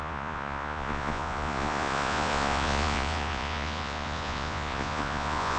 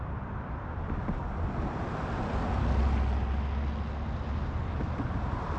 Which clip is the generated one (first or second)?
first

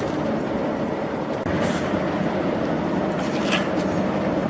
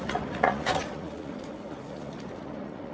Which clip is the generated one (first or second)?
second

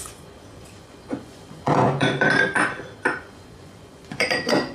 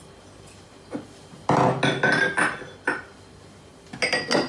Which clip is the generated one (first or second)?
first